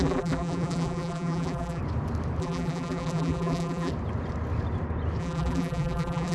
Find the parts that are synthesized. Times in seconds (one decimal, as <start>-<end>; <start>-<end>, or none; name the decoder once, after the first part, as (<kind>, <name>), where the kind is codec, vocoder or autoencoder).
0.0-1.8 (vocoder, BigVGAN v2); 2.4-3.9; 5.2-6.3